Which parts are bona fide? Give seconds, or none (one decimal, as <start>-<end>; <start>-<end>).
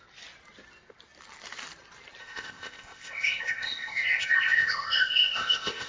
0.0-2.2